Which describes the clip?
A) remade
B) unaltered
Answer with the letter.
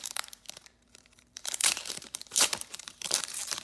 A